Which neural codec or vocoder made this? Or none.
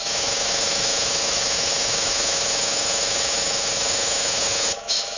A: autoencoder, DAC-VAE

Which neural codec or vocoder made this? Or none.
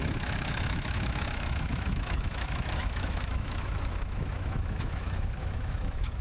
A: autoencoder, DAC-VAE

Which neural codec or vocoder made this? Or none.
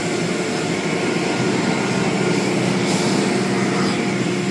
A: none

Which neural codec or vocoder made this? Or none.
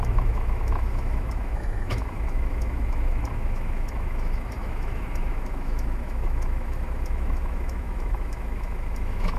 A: autoencoder, DAC-VAE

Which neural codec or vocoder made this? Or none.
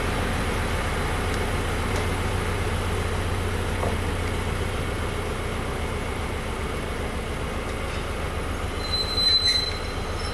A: none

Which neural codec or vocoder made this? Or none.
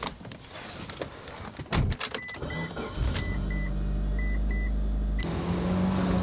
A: none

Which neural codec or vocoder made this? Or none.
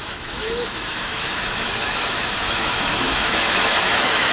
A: autoencoder, DAC-VAE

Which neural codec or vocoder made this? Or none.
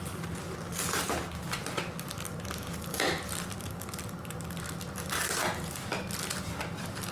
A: none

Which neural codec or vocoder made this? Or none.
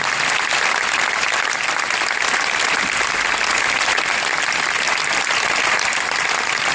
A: none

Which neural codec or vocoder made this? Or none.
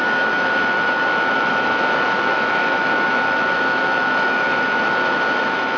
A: autoencoder, DAC-VAE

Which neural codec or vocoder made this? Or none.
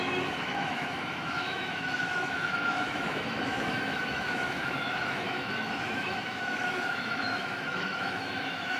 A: autoencoder, DAC-VAE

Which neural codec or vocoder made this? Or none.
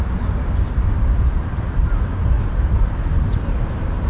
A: none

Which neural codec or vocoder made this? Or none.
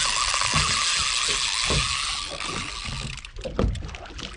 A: none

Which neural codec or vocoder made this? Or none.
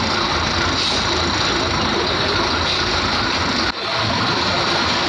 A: none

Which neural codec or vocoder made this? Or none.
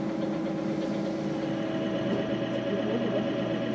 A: none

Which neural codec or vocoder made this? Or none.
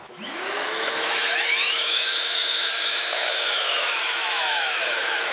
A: autoencoder, DAC-VAE